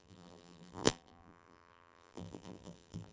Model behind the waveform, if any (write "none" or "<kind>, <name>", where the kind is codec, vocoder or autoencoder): vocoder, BigVGAN v2